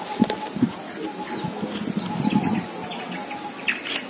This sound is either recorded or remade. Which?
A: recorded